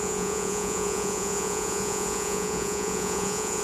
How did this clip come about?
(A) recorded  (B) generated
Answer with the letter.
B